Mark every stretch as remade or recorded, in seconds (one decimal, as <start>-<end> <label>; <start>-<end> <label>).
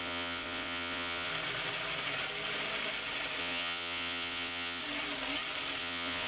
0.0-1.3 remade; 1.3-3.4 recorded; 3.4-4.8 remade; 4.8-5.8 recorded; 5.8-6.3 remade